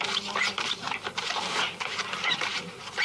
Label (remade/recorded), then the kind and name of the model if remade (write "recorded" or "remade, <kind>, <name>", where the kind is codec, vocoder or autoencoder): remade, vocoder, BigVGAN v2